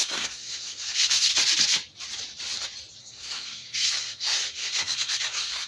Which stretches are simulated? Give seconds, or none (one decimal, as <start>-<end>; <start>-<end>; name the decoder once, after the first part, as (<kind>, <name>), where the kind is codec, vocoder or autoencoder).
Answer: 0.0-1.3 (codec, SNAC); 3.0-5.7